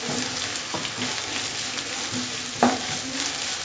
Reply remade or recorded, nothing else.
recorded